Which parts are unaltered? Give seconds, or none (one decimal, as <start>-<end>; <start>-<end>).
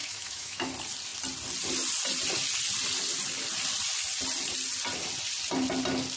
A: 0.7-6.2